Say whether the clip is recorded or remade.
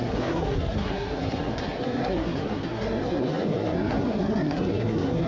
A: remade